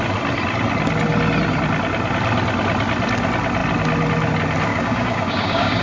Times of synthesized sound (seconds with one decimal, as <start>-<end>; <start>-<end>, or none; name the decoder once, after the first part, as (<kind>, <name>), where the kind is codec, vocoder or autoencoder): 4.7-5.8 (codec, DAC)